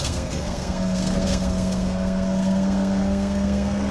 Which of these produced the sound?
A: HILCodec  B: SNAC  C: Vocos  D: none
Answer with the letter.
B